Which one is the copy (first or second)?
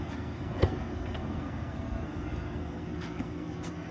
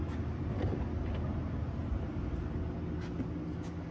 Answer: first